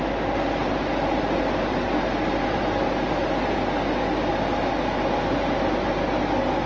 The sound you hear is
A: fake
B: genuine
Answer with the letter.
B